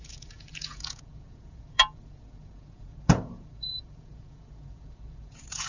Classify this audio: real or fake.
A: fake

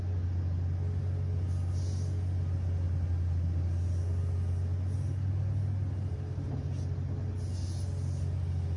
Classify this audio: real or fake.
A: real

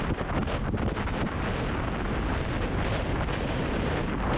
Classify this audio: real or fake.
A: real